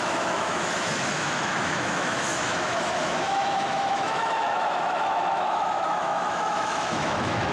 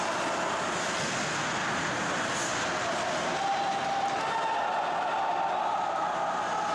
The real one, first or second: second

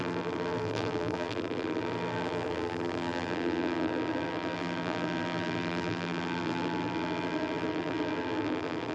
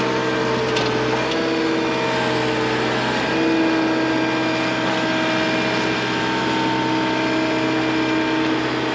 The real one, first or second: second